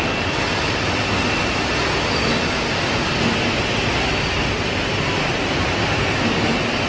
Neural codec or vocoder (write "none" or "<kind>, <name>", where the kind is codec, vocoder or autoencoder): none